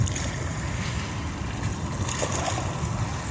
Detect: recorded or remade recorded